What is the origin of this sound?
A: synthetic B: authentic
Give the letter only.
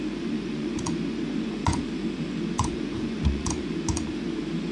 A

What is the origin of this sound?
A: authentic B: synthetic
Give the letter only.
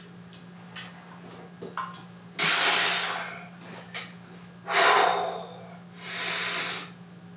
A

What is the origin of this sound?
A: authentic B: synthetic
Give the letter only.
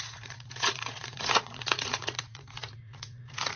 B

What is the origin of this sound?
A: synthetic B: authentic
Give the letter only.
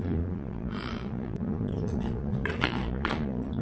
A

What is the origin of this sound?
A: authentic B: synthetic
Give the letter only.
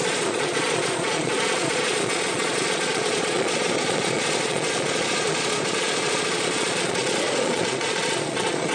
B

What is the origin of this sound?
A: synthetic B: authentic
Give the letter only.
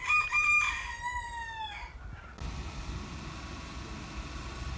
B